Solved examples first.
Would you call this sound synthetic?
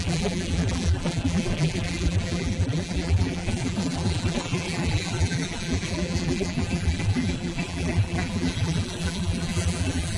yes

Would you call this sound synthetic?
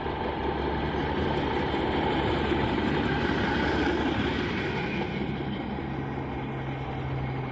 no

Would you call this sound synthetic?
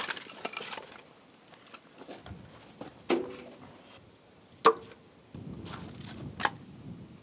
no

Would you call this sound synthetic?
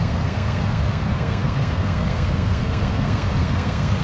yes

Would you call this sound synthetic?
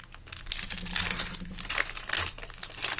no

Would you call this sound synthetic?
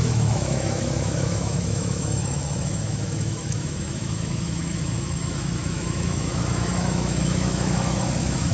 yes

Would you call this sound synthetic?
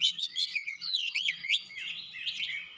yes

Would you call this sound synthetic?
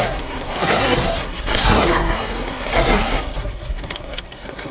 yes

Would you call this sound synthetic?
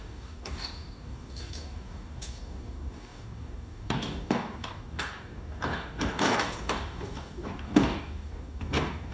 yes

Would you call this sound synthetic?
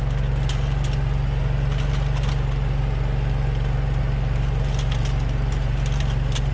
no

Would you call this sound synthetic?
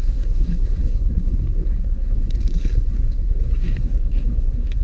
yes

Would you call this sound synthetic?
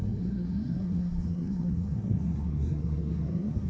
yes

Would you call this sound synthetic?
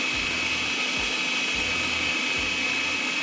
no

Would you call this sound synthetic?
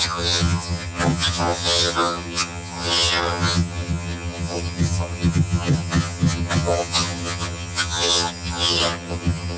yes